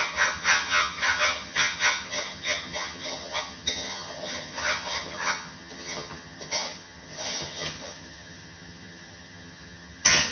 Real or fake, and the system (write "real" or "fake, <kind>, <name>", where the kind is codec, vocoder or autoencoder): fake, vocoder, HiFi-GAN